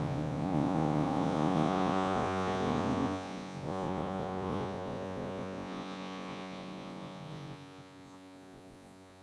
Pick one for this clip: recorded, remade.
remade